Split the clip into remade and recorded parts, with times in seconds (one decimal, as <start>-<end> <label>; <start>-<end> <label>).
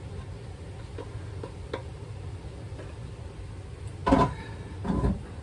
0.0-5.4 recorded